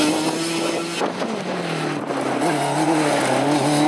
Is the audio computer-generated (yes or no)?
no